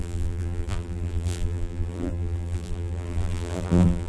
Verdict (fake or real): fake